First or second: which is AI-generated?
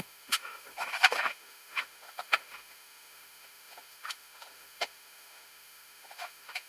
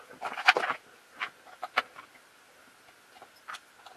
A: first